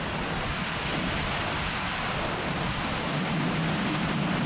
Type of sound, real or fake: real